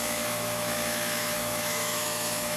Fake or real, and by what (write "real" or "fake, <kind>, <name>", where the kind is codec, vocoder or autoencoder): fake, autoencoder, DAC-VAE